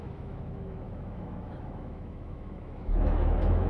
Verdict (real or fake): fake